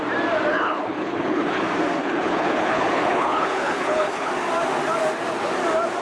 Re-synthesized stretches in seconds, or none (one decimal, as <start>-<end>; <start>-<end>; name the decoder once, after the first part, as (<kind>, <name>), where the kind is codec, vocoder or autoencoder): 0.5-1.6 (codec, HILCodec); 2.0-4.3